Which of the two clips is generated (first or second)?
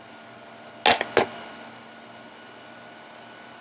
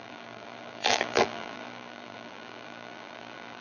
second